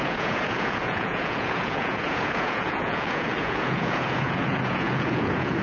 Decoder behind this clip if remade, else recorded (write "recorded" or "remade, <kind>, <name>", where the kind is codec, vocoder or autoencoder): remade, vocoder, Vocos